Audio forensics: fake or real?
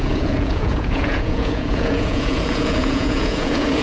fake